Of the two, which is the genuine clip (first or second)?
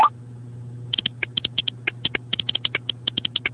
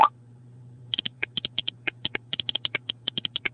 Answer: first